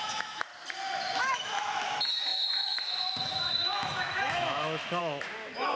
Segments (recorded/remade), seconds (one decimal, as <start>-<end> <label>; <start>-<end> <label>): 0.0-0.5 remade; 0.5-1.2 recorded; 1.2-5.8 remade

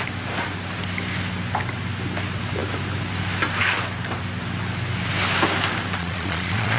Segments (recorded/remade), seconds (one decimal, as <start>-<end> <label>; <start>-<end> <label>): 0.0-6.0 recorded; 6.0-6.8 remade

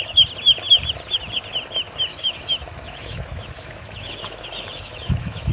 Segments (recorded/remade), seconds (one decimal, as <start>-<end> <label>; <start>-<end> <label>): 0.0-2.1 recorded; 2.1-5.5 remade

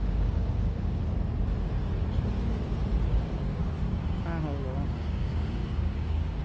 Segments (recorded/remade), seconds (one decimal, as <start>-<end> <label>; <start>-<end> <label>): 0.0-1.0 remade; 1.0-3.1 recorded; 3.1-3.6 remade; 3.6-4.4 recorded; 4.4-6.4 remade

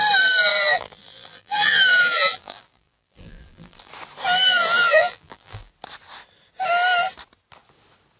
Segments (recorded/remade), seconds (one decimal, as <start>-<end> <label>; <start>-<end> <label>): 0.0-0.5 recorded; 0.5-3.9 remade; 3.9-4.4 recorded; 4.4-5.7 remade; 5.7-8.2 recorded

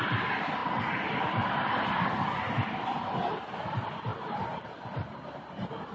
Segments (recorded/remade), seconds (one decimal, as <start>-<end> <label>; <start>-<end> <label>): 0.0-5.9 recorded